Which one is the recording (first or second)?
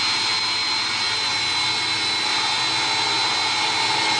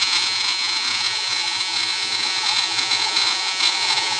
first